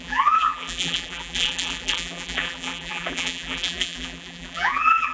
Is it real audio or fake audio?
fake